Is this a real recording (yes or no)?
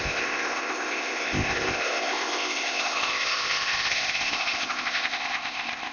no